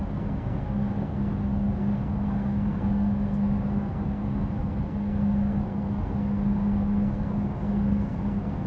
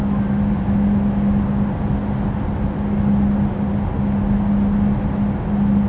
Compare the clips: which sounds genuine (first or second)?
second